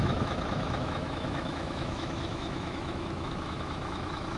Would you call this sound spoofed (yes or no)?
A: yes